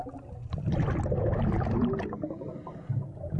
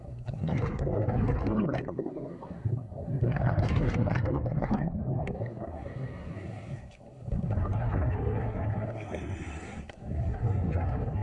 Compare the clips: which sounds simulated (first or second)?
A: second